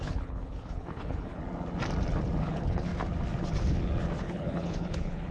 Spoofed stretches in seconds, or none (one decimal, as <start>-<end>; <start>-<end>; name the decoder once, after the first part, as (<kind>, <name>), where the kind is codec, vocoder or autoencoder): 0.0-1.4 (codec, HILCodec); 2.4-2.9; 4.2-5.3